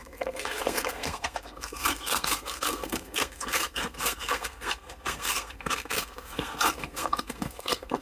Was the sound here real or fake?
fake